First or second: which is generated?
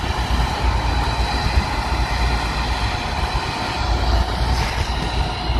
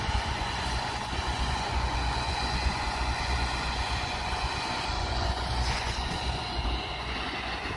second